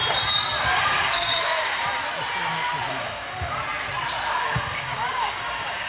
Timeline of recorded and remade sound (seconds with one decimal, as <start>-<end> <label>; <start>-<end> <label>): 0.0-0.6 recorded; 0.6-1.7 remade; 1.7-2.9 recorded; 2.9-3.6 remade; 3.6-4.3 recorded; 4.3-5.9 remade